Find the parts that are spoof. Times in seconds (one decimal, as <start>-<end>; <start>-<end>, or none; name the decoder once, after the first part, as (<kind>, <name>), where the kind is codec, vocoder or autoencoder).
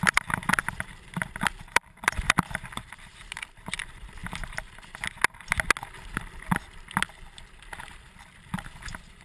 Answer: 0.0-4.2 (vocoder, BigVGAN v2); 7.9-9.2